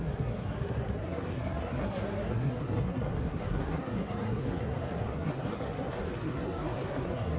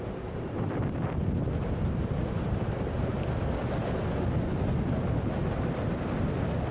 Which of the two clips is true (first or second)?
second